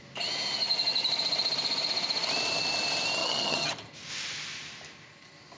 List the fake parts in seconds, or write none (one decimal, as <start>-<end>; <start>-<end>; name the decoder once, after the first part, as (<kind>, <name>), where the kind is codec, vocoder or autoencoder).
3.2-3.7 (vocoder, HiFi-GAN)